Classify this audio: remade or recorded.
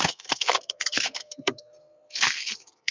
remade